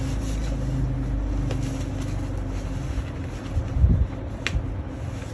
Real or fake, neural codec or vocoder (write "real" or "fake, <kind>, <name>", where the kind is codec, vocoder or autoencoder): real